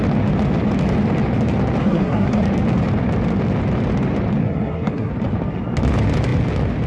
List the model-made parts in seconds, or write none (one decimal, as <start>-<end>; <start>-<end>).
1.8-2.4; 4.4-5.1